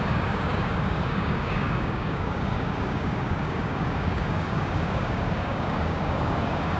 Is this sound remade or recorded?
remade